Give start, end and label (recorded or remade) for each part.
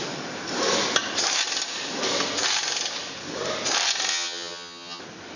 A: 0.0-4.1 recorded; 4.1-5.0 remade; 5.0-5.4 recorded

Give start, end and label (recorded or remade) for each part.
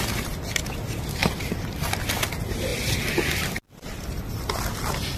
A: 0.0-1.2 recorded; 1.2-1.9 remade; 1.9-2.7 recorded; 2.7-4.5 remade; 4.5-5.2 recorded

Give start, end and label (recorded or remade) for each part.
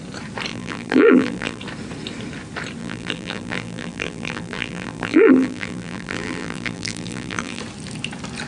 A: 0.0-0.5 recorded; 0.5-1.6 remade; 1.6-2.8 recorded; 2.8-7.6 remade; 7.6-8.5 recorded